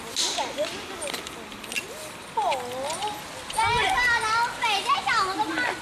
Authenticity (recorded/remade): recorded